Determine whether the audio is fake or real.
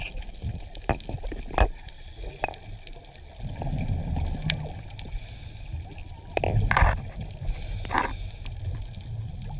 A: real